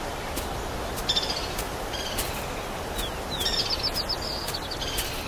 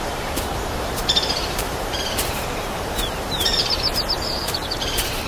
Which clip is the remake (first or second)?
second